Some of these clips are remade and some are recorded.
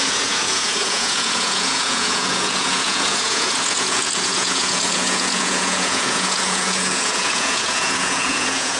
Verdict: remade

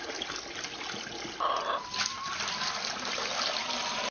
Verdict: recorded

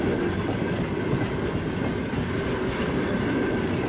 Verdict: recorded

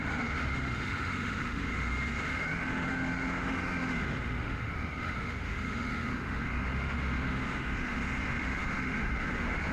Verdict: remade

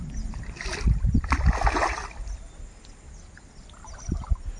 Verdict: recorded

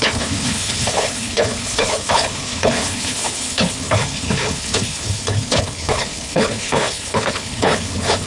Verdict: remade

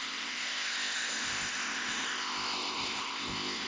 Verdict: remade